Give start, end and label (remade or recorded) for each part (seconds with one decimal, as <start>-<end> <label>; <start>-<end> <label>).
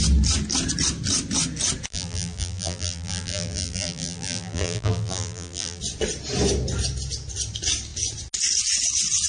0.0-1.9 recorded; 1.9-5.8 remade; 5.8-9.3 recorded